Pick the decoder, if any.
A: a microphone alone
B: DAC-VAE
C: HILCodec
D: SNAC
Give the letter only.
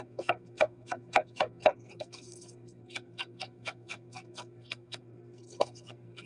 D